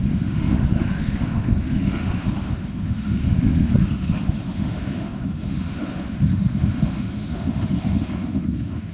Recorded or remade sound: remade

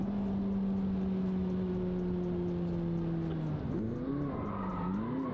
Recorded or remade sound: recorded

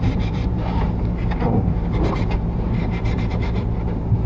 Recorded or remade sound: remade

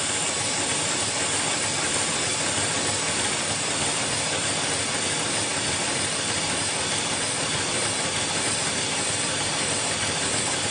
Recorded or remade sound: remade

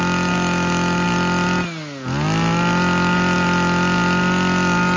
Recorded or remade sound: recorded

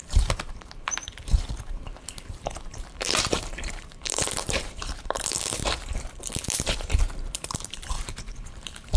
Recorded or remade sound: remade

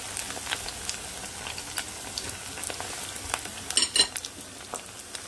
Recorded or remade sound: recorded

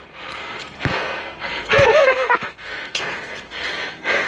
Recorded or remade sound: remade